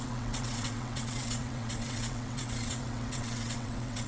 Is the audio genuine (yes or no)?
no